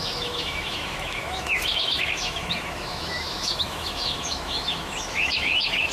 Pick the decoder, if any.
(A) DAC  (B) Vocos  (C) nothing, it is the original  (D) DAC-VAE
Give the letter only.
D